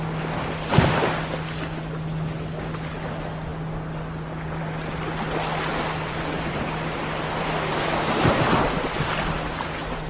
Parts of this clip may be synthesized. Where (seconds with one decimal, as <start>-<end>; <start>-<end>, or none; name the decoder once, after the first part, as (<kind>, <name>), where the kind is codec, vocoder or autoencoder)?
none